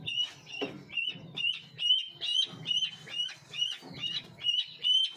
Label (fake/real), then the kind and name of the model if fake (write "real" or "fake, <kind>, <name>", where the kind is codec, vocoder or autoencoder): real